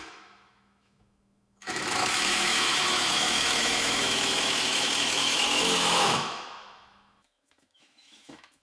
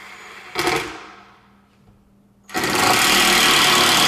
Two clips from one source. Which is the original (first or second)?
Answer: second